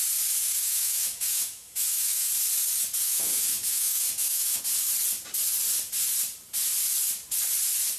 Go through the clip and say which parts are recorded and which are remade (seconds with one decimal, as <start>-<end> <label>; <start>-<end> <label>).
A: 0.0-0.4 recorded; 0.4-2.3 remade; 2.3-3.0 recorded; 3.0-4.6 remade; 4.6-8.0 recorded